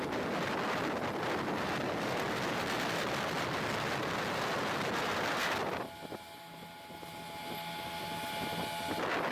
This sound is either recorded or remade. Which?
recorded